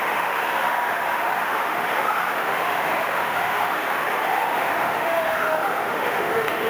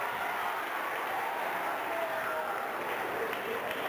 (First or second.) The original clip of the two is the second